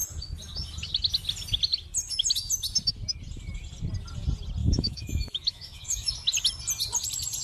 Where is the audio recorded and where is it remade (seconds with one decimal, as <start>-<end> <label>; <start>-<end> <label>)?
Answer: 0.0-4.6 recorded; 4.6-6.1 remade; 6.1-7.4 recorded